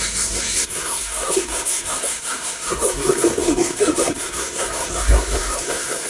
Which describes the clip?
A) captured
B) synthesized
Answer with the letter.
B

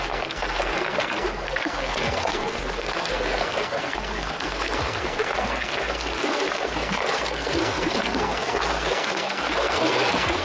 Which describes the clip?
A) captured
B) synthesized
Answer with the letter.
B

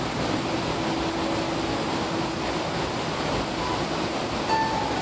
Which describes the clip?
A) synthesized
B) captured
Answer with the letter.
B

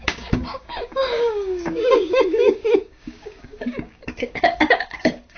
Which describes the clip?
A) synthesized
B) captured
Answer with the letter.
A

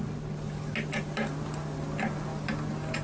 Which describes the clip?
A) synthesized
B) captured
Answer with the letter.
B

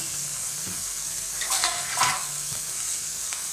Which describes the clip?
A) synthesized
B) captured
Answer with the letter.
A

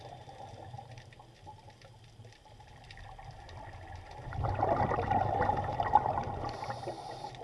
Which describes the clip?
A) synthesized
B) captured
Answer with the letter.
B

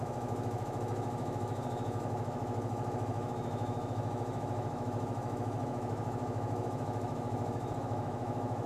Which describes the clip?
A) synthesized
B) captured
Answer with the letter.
A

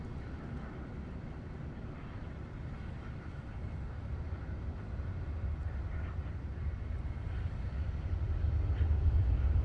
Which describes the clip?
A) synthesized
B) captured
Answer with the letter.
B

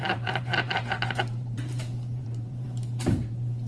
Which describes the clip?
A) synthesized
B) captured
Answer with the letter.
A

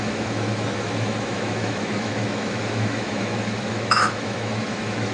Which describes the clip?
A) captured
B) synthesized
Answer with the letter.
B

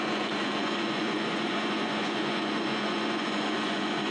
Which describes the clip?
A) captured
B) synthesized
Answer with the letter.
B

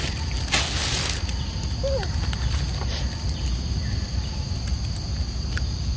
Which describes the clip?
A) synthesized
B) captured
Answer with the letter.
B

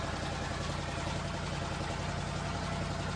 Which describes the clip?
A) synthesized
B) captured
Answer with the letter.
B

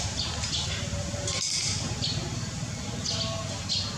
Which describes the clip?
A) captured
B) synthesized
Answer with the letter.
A